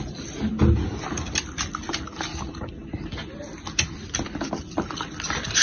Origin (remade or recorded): recorded